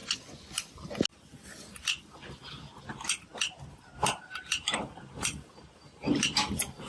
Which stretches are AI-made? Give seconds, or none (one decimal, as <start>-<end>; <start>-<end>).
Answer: 0.0-0.7